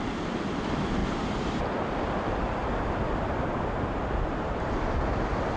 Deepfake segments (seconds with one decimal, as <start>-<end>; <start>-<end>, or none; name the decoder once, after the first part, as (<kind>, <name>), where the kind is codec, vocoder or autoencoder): 1.0-1.6 (vocoder, BigVGAN v2); 2.6-4.8